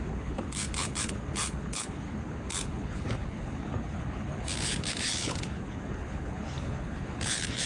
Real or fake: fake